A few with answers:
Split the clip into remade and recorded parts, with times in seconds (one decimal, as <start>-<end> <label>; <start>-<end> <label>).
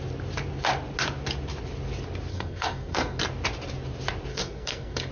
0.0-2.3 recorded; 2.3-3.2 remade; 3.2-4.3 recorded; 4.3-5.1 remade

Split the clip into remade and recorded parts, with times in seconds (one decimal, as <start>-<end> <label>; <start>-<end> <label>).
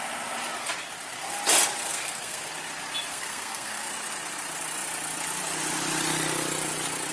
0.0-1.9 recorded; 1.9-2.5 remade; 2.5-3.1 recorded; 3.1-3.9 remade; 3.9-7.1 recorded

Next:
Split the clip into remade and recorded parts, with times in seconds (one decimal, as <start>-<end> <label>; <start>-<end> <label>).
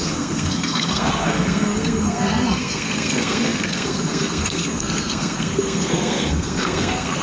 0.0-7.2 remade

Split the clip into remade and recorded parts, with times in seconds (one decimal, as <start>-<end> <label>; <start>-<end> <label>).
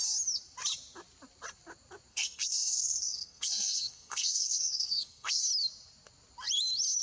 0.0-2.1 recorded; 2.1-5.4 remade; 5.4-7.0 recorded